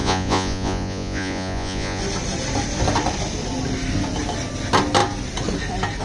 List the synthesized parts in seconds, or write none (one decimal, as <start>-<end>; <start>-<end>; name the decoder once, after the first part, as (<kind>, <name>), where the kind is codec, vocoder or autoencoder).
0.0-2.0 (vocoder, Vocos)